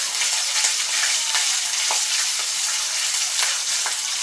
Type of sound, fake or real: real